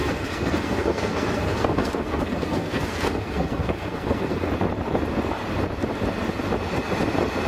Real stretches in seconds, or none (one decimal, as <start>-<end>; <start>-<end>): 4.5-7.5

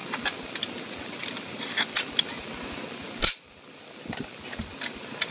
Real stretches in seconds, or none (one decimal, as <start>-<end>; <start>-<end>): 0.0-5.3

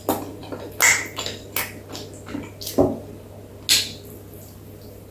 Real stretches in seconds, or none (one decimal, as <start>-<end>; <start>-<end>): 0.0-5.1

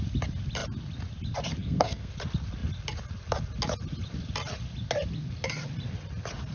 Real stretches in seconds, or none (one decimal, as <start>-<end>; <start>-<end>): 0.0-1.6; 2.1-6.5

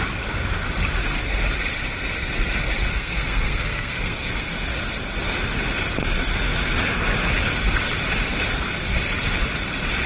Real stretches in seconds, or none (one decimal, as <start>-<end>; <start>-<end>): 0.0-2.9; 4.5-10.1

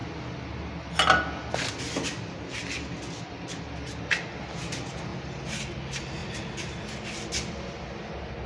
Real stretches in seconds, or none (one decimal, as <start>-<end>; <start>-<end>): 0.0-8.5